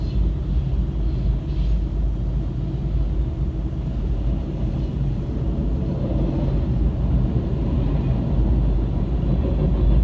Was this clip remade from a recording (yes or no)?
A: no